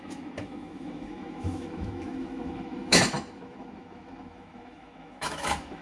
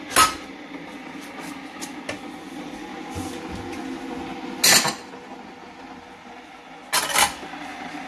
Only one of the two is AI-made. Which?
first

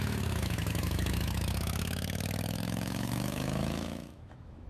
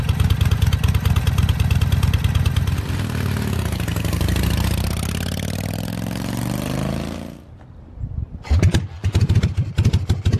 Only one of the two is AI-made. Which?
first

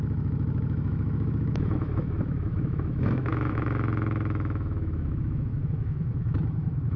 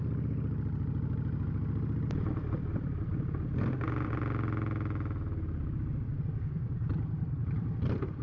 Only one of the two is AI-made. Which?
first